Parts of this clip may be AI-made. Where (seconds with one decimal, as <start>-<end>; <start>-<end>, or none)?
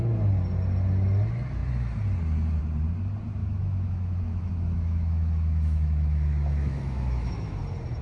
3.4-7.6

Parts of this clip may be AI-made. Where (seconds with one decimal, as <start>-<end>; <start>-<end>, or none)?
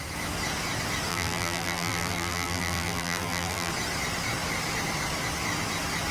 1.1-3.7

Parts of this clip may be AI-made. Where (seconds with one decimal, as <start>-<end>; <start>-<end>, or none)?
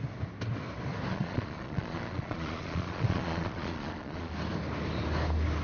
1.1-4.3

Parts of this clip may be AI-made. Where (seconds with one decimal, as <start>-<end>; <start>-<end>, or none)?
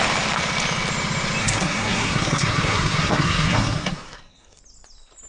1.4-4.6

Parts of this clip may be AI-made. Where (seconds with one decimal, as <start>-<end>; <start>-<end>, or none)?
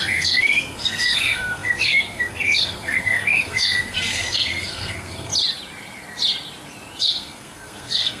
0.0-5.3; 7.0-8.2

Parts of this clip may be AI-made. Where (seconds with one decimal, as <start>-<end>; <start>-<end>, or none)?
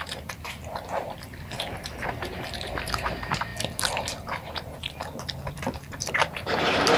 0.0-3.5; 6.1-7.0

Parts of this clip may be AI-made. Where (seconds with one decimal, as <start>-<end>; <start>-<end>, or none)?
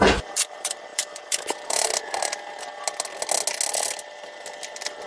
0.0-1.9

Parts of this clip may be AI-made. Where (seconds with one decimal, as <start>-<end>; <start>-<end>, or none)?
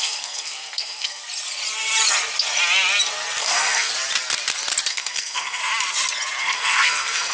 0.0-1.2; 3.4-3.9; 4.9-5.6; 6.4-7.3